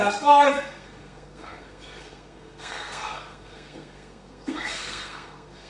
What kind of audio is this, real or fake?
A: fake